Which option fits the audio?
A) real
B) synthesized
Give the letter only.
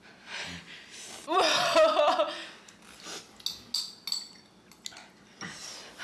A